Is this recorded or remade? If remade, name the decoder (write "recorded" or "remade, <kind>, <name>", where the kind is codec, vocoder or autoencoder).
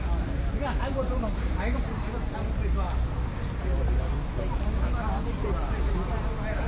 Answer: recorded